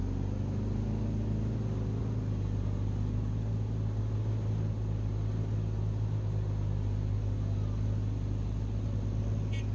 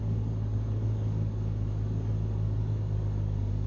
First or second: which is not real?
second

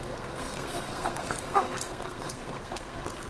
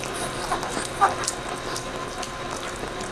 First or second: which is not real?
first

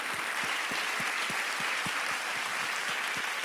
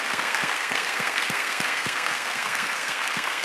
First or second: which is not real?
second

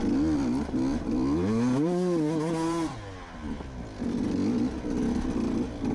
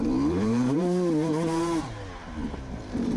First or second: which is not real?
second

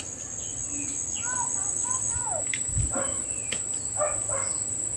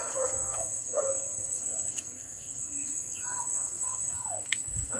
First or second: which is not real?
second